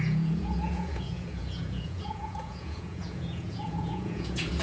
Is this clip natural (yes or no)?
no